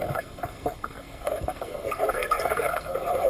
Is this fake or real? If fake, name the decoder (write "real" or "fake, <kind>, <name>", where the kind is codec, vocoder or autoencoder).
fake, codec, SNAC